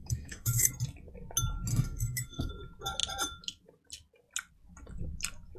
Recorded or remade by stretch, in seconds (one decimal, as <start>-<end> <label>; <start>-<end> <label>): 0.0-0.7 remade; 0.7-1.7 recorded; 1.7-2.5 remade; 2.5-5.6 recorded

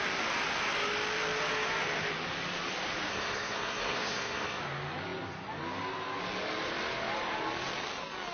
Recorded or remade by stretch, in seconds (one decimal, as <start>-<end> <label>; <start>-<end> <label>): 0.0-3.1 recorded; 3.1-4.6 remade; 4.6-8.3 recorded